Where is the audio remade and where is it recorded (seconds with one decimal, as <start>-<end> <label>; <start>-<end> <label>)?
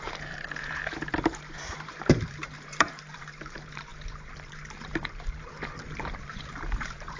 0.0-3.9 remade; 3.9-4.8 recorded; 4.8-7.2 remade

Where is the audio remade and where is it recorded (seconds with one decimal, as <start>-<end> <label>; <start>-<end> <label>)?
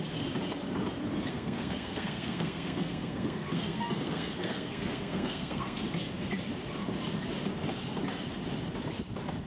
0.0-1.3 recorded; 1.3-5.8 remade; 5.8-9.5 recorded